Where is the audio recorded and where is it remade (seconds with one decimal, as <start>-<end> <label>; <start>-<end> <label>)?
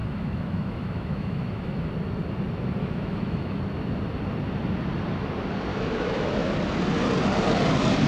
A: 0.0-1.9 remade; 1.9-2.8 recorded; 2.8-3.6 remade; 3.6-5.7 recorded; 5.7-6.5 remade; 6.5-8.1 recorded